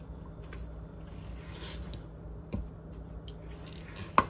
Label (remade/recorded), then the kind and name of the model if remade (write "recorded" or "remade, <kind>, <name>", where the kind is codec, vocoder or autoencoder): recorded